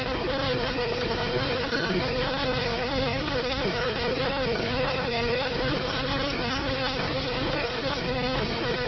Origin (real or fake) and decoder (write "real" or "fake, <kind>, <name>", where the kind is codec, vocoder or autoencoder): fake, codec, SNAC